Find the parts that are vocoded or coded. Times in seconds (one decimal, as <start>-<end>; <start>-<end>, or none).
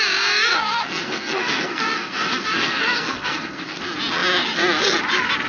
0.5-3.8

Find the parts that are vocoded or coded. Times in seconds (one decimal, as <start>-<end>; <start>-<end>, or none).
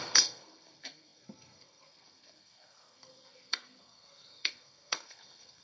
0.0-5.6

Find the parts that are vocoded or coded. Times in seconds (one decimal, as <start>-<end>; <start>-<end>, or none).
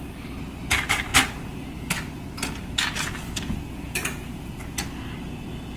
none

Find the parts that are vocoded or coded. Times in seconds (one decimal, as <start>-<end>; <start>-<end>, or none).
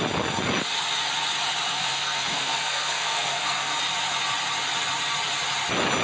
1.7-3.8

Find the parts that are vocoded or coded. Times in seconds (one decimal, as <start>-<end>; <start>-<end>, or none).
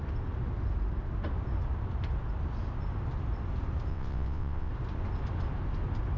3.9-4.7